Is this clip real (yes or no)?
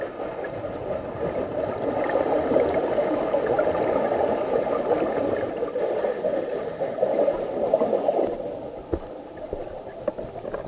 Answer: yes